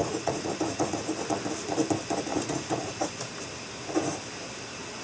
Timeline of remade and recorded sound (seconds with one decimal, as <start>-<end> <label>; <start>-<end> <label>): 0.0-1.2 remade; 1.2-2.3 recorded; 2.3-3.1 remade; 3.1-5.0 recorded